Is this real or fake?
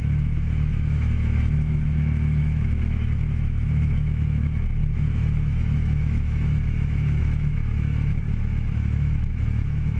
fake